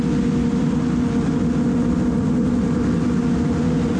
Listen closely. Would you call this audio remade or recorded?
recorded